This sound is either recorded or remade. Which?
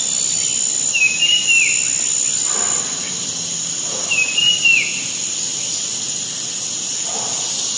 recorded